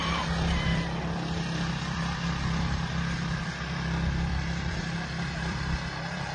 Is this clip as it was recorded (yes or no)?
no